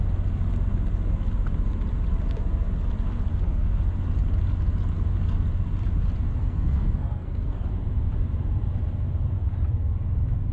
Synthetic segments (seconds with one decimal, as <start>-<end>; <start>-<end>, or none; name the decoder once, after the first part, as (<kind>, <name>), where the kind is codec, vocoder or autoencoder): 3.3-3.8 (codec, SNAC); 6.4-7.7